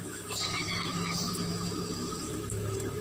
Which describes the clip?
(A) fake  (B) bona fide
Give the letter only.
A